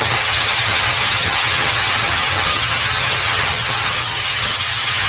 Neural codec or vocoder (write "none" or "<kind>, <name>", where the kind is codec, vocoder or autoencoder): vocoder, HiFi-GAN